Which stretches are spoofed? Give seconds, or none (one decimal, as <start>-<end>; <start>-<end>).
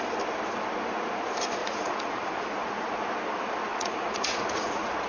1.6-2.8; 3.7-5.1